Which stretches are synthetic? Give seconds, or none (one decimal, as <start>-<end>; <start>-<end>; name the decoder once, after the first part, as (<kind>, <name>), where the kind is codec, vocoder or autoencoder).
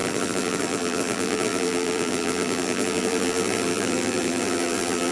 0.0-5.1 (vocoder, BigVGAN v2)